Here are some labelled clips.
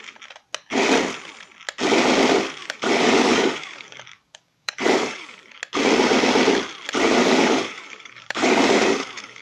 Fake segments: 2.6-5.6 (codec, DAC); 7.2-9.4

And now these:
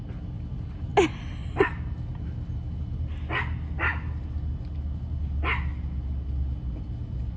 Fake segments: none

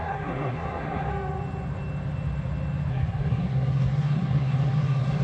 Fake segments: 0.0-1.1 (codec, SNAC); 2.9-5.2

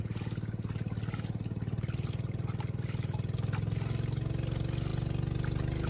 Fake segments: none

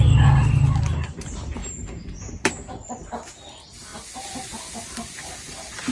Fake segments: none

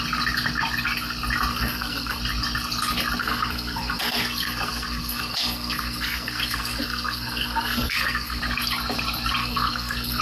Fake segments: 1.5-2.2 (codec, SNAC); 3.2-8.4; 9.4-10.2